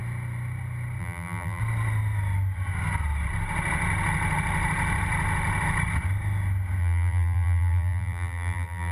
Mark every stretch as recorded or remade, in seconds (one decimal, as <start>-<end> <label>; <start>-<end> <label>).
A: 0.0-1.0 recorded; 1.0-1.6 remade; 1.6-6.8 recorded; 6.8-8.9 remade